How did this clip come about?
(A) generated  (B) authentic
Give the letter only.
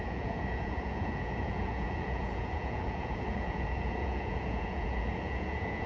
A